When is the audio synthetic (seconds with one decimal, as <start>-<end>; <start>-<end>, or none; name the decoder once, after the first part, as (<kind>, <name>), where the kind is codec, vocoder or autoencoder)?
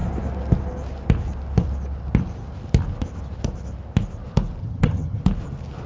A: 4.6-5.2 (vocoder, HiFi-GAN)